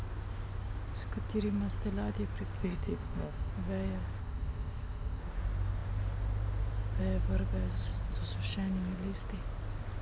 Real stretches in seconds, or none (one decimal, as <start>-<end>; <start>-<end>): 0.0-2.6; 3.5-4.2; 5.2-10.0